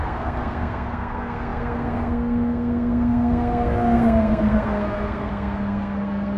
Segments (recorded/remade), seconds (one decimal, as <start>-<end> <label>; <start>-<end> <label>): 0.0-6.4 remade